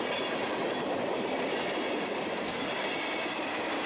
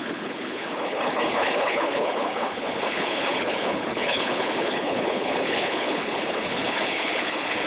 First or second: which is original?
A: first